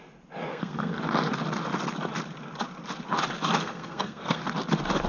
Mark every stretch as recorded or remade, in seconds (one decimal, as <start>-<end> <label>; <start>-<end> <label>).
0.0-0.5 recorded; 0.5-1.0 remade; 1.0-3.6 recorded; 3.6-4.4 remade; 4.4-5.1 recorded